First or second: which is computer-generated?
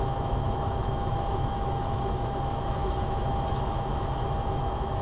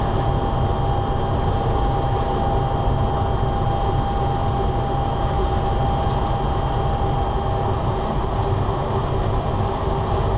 first